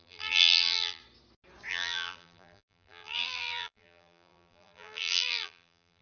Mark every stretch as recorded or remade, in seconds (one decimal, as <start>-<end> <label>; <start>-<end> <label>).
0.0-1.0 remade; 1.0-1.7 recorded; 1.7-6.0 remade